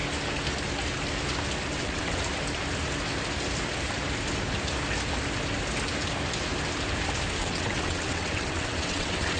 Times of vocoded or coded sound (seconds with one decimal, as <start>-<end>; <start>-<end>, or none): 1.7-2.2; 7.4-9.4

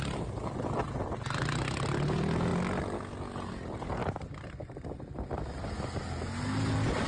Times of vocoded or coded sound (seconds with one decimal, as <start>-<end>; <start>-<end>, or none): none

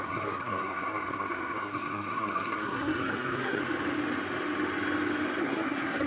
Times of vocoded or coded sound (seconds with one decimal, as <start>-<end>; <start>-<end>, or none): 0.0-3.6; 5.4-6.1

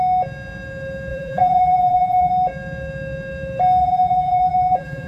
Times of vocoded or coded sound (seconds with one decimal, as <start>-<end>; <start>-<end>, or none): 1.1-2.3; 3.8-5.1

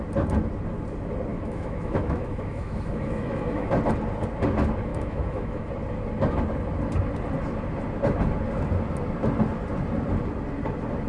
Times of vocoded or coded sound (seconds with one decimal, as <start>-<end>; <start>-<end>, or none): 1.3-3.7; 4.9-5.7

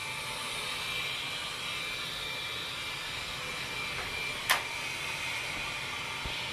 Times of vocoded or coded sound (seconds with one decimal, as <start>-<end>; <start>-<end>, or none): none

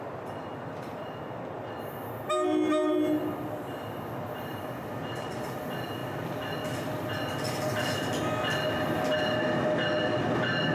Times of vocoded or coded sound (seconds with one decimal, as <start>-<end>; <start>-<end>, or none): 4.5-5.3

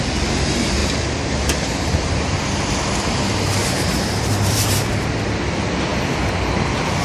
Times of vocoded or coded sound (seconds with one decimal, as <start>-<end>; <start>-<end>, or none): 0.8-2.1; 3.6-4.9